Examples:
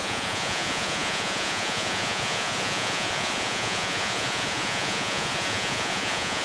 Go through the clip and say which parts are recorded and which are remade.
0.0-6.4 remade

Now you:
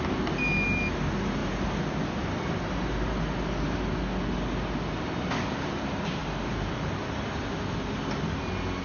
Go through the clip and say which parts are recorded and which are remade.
0.0-8.8 recorded

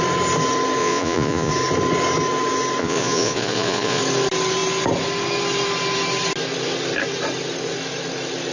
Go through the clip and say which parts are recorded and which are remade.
0.0-0.8 recorded; 0.8-1.5 remade; 1.5-2.8 recorded; 2.8-4.0 remade; 4.0-8.5 recorded

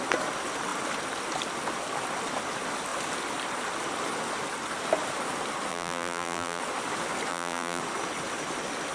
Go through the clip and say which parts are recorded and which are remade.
0.0-5.7 recorded; 5.7-6.6 remade; 6.6-7.3 recorded; 7.3-7.8 remade; 7.8-8.9 recorded

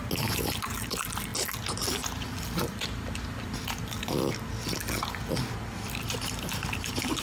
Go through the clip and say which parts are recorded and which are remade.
0.0-7.2 recorded